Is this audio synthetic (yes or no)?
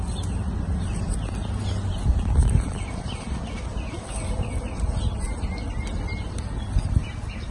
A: no